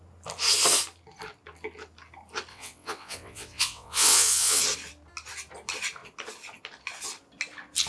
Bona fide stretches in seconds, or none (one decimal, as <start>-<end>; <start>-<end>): 0.0-2.5; 4.6-7.9